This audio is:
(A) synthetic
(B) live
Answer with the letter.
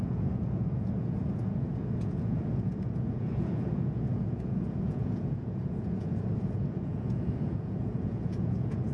A